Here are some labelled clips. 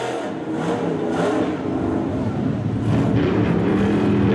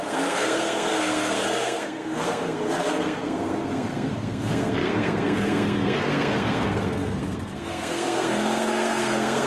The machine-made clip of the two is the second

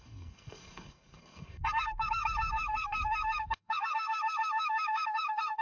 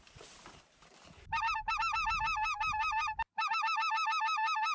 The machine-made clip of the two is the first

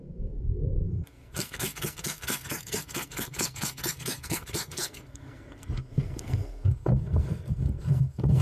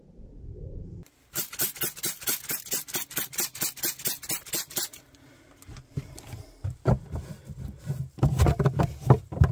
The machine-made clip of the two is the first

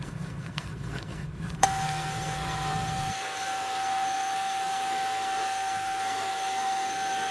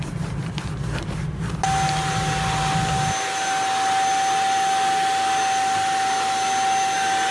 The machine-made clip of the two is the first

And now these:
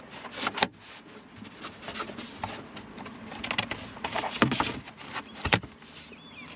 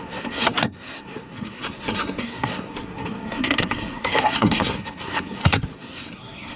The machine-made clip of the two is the second